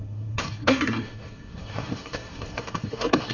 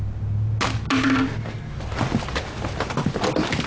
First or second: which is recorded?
second